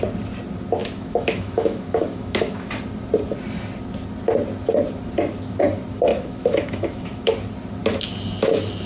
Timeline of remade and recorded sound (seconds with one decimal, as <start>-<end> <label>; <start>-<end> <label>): 0.0-0.8 recorded; 0.8-2.7 remade; 2.7-6.1 recorded; 6.1-7.3 remade; 7.3-8.9 recorded